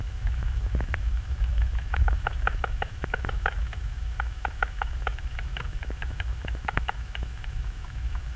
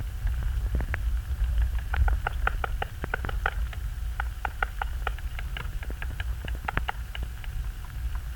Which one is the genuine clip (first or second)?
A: second